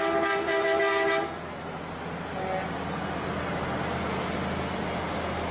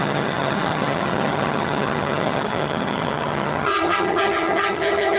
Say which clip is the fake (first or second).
second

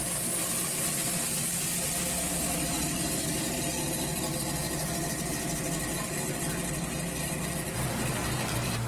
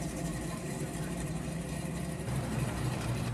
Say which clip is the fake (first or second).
second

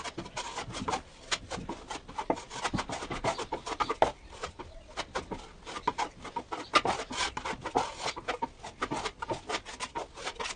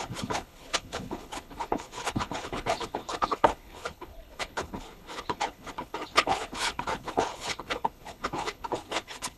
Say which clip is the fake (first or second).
second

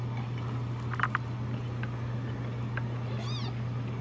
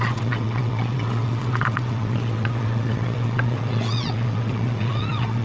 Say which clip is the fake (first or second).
second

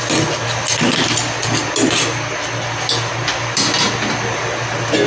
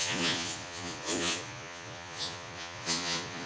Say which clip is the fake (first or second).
second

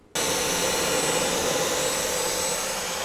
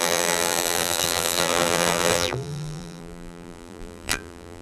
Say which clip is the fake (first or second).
second